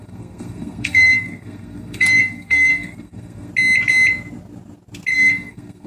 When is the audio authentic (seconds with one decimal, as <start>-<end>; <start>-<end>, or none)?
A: 3.5-5.1